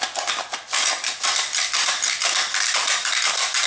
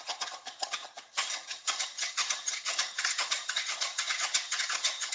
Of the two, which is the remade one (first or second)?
second